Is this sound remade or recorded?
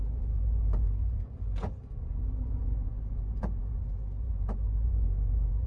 remade